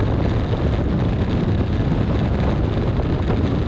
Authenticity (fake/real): real